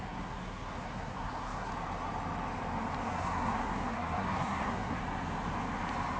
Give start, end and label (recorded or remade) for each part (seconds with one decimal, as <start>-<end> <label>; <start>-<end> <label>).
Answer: 0.0-1.7 remade; 1.7-3.0 recorded; 3.0-5.0 remade; 5.0-6.2 recorded